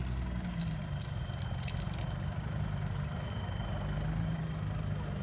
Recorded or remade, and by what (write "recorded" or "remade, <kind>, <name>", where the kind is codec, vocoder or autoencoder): recorded